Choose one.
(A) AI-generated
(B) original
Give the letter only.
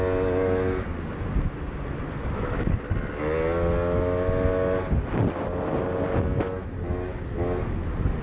B